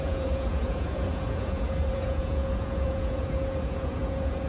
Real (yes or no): no